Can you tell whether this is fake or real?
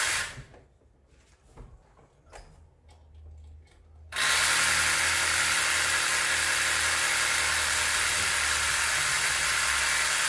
real